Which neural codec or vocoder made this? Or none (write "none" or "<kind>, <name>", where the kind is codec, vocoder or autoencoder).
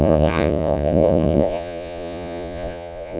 vocoder, Vocos